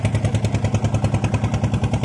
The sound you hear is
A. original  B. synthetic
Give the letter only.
A